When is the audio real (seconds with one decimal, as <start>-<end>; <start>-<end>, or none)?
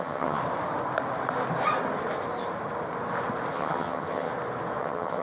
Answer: 0.4-3.5; 4.3-4.8